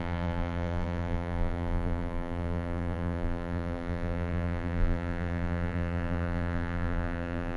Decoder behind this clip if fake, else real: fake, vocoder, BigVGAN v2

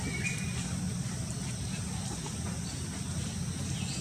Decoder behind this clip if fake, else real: real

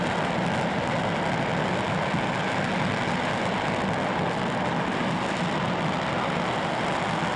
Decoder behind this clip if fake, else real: real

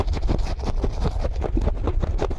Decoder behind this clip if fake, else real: real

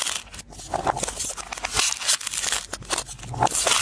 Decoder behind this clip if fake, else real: real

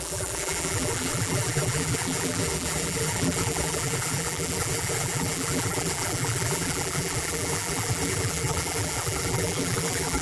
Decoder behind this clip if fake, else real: fake, vocoder, BigVGAN v2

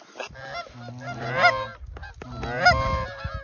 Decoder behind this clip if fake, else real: real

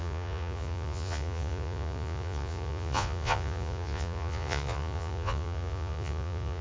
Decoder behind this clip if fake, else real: fake, vocoder, Vocos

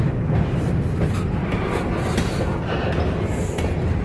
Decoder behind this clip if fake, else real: real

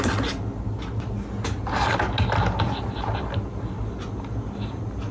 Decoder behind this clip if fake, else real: real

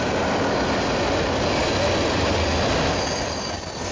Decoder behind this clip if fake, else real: real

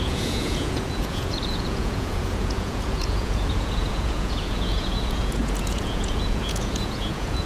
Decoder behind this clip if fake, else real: fake, vocoder, Vocos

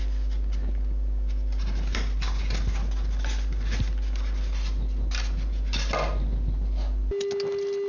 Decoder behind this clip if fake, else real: real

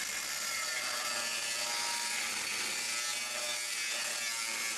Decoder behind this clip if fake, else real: real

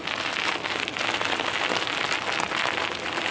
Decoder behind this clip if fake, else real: real